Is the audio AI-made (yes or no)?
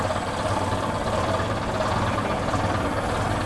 no